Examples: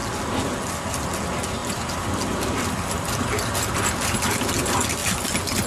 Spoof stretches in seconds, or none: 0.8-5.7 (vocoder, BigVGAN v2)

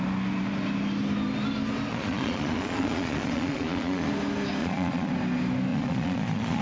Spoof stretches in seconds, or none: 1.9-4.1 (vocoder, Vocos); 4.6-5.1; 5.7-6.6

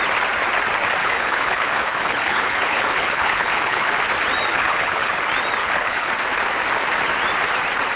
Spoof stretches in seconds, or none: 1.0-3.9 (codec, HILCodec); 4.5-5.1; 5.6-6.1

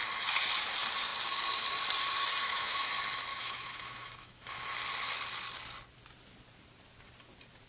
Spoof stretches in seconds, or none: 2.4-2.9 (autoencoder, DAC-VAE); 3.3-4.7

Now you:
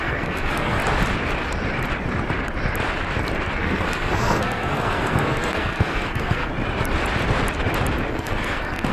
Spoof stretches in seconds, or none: 0.0-0.8 (codec, SNAC); 3.6-6.5; 8.1-8.9

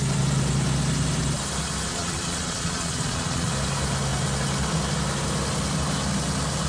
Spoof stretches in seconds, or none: 1.9-3.5 (vocoder, Vocos)